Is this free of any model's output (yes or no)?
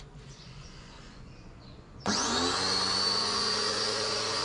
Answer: no